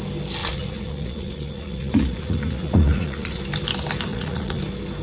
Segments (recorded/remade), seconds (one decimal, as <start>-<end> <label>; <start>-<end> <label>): 0.0-0.4 recorded; 0.4-3.4 remade; 3.4-4.1 recorded; 4.1-4.6 remade; 4.6-5.0 recorded